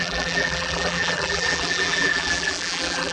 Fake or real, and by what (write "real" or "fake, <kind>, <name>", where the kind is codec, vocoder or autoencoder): fake, vocoder, BigVGAN v2